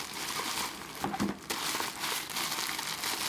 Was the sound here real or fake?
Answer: real